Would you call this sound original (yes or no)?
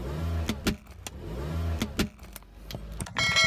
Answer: yes